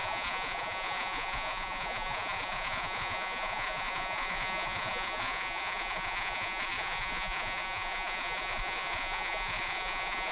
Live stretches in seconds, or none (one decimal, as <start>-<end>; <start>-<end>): none